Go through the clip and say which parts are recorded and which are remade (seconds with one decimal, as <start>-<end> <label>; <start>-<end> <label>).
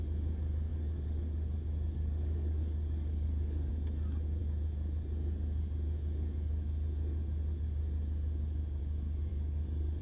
0.0-0.7 recorded; 0.7-3.7 remade; 3.7-9.3 recorded; 9.3-10.0 remade